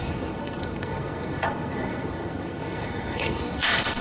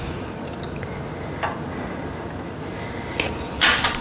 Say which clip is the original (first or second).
second